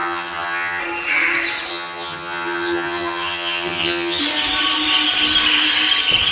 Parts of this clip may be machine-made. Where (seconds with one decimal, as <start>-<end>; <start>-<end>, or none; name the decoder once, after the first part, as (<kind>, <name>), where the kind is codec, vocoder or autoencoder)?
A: 0.0-0.8 (vocoder, HiFi-GAN); 1.7-4.2